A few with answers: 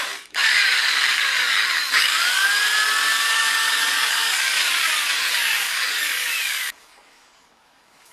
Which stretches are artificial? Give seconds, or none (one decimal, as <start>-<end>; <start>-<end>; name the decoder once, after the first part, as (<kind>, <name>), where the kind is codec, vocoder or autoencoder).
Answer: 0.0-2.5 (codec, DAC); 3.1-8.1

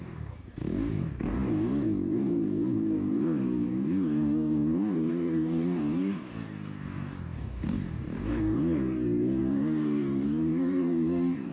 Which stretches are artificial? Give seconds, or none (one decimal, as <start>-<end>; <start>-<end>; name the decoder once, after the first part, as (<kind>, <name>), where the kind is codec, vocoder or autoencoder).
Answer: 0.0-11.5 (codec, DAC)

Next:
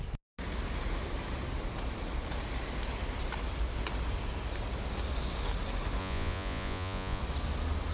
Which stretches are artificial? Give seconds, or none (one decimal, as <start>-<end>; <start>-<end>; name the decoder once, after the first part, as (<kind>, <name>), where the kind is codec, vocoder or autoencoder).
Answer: 6.0-7.2 (vocoder, Vocos)

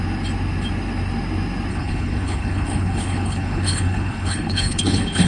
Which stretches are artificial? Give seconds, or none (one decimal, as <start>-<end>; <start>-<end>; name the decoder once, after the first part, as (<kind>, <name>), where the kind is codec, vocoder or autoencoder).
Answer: 1.7-5.3 (codec, HILCodec)

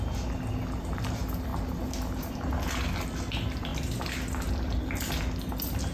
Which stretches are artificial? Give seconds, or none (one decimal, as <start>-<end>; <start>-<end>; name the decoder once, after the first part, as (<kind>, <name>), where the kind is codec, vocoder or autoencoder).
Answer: none

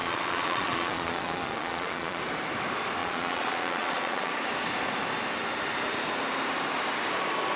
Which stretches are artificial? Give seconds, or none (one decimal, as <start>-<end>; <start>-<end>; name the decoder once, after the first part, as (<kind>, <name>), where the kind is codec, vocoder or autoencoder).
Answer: 0.0-2.2 (vocoder, Vocos); 3.0-4.3

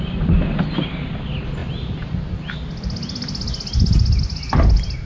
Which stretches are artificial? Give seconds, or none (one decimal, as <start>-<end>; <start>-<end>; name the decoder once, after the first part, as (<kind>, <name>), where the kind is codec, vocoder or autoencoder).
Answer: none